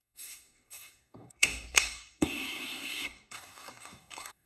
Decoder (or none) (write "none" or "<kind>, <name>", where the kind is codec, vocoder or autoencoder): codec, SNAC